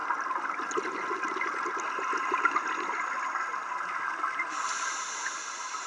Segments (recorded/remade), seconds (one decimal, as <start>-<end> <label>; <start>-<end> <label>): 0.0-5.9 recorded